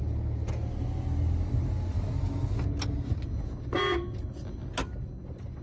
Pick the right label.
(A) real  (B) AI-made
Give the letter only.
A